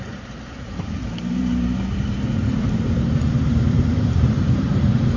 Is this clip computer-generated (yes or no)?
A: yes